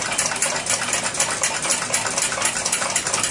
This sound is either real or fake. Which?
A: fake